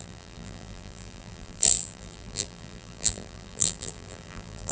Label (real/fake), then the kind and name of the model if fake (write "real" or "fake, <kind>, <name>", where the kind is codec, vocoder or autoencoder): fake, vocoder, BigVGAN v2